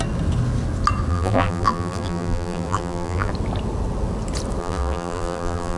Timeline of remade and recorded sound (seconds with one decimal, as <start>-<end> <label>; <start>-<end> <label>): 0.0-1.1 recorded; 1.1-3.3 remade; 3.3-4.6 recorded; 4.6-5.8 remade